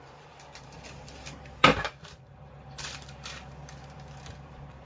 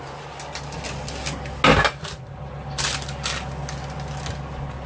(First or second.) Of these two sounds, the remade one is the first